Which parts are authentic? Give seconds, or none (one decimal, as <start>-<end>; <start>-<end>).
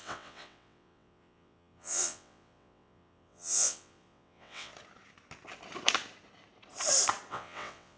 4.7-7.3